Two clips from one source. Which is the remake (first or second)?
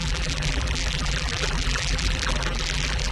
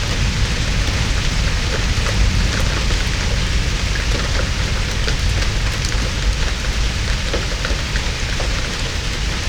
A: first